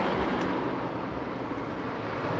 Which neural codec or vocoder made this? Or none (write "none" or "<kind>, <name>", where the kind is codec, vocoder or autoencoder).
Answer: none